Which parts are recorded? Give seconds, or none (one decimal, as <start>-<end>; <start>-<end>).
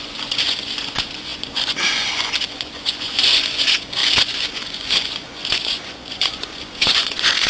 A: none